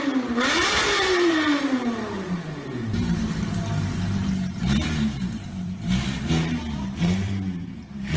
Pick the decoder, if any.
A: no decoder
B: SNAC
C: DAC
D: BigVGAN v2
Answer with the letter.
D